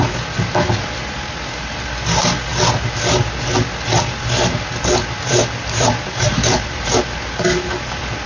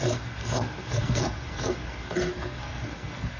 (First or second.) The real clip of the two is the first